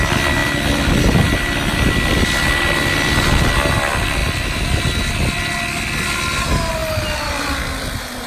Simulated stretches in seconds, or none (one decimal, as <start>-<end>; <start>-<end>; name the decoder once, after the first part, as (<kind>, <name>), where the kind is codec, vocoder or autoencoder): none